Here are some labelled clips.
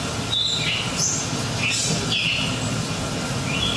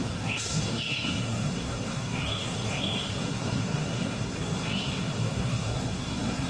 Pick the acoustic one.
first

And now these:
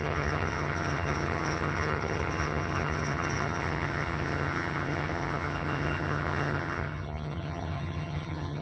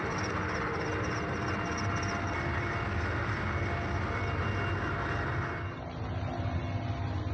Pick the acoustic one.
second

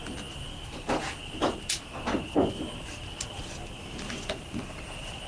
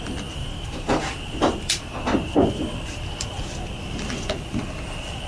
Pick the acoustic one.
first